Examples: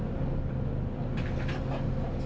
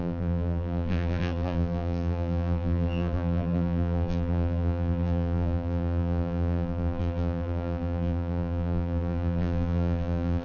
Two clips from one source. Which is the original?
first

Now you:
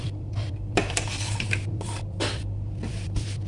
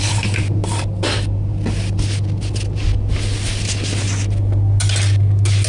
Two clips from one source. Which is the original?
second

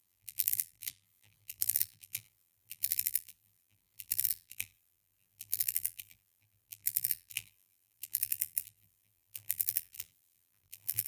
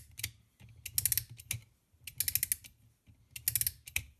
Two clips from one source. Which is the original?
second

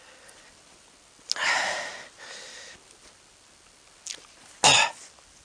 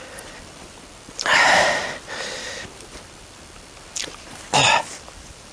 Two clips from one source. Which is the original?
first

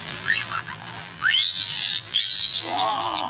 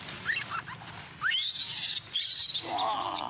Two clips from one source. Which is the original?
second